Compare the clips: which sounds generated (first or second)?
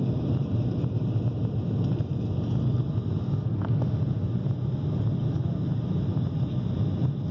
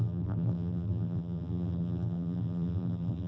second